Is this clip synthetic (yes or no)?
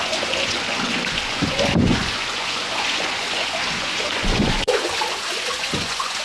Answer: yes